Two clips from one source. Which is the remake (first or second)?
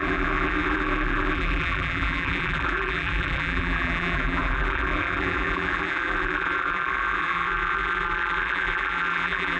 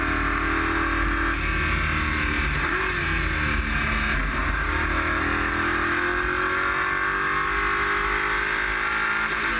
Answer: first